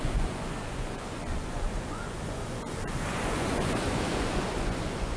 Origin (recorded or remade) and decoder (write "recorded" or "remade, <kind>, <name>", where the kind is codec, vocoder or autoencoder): remade, vocoder, Vocos